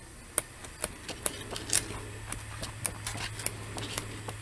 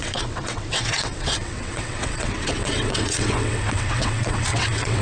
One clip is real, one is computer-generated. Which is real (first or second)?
first